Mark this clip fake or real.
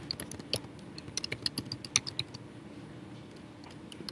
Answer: real